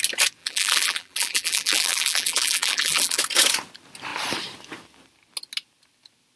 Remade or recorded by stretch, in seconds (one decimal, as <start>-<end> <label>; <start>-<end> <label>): 0.0-0.4 recorded; 0.4-3.2 remade; 3.2-6.4 recorded